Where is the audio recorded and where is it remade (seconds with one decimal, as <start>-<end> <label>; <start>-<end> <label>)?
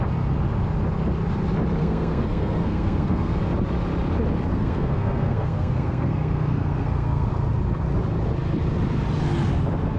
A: 0.0-1.8 recorded; 1.8-3.4 remade; 3.4-4.5 recorded; 4.5-7.3 remade; 7.3-10.0 recorded